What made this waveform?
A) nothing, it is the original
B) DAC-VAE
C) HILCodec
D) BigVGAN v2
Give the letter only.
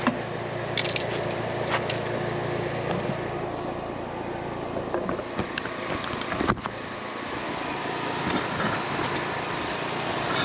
A